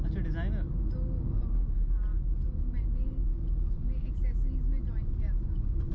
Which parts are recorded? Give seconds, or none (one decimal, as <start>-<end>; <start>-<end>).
0.0-5.9